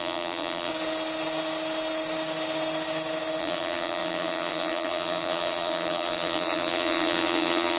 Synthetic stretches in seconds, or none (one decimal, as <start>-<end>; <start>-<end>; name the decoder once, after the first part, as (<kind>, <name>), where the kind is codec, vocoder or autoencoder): 0.0-0.7 (vocoder, BigVGAN v2); 3.4-7.8